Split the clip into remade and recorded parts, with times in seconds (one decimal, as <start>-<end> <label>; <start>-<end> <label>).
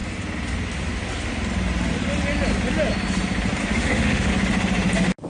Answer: 0.0-3.6 recorded; 3.6-4.3 remade; 4.3-5.3 recorded